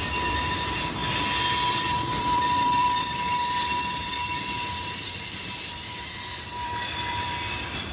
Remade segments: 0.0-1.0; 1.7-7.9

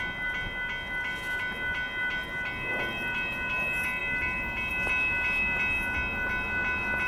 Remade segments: none

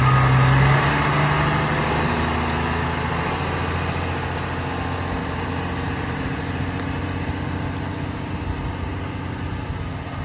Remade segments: 5.2-6.4

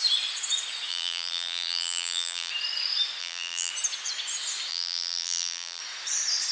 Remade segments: 0.9-2.5; 3.2-3.7; 4.7-5.8